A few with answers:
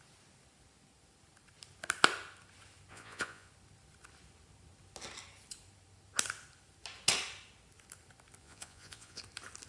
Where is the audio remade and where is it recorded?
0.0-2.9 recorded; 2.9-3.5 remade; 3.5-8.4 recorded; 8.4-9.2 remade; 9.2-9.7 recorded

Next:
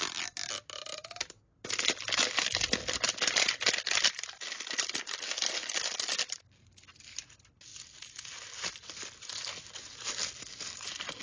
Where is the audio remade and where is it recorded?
0.0-11.2 recorded

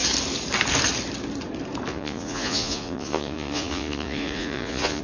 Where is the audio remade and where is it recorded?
0.0-1.9 recorded; 1.9-5.0 remade

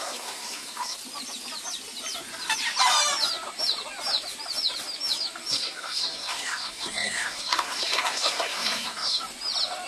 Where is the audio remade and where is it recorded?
0.0-1.0 remade; 1.0-5.5 recorded; 5.5-9.2 remade; 9.2-9.9 recorded

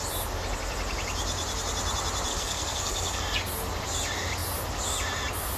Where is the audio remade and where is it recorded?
0.0-2.3 recorded; 2.3-3.2 remade; 3.2-5.6 recorded

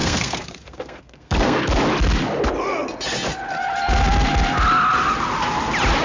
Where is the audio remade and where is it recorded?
0.0-1.6 remade; 1.6-6.0 recorded